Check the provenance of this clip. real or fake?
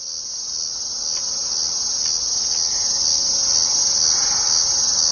real